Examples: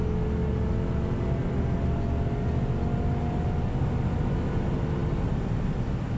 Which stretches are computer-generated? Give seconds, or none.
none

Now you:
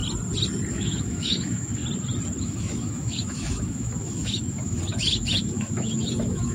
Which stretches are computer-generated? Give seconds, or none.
0.7-1.8 (autoencoder, DAC-VAE); 2.4-6.5

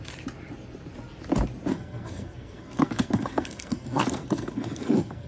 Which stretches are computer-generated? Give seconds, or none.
1.7-5.3 (codec, SNAC)

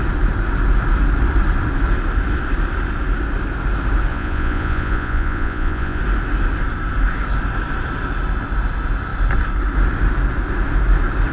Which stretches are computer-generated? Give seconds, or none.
4.1-6.0 (vocoder, Vocos)

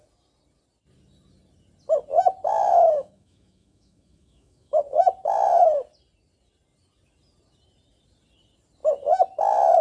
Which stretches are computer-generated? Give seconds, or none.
2.5-4.8 (autoencoder, DAC-VAE)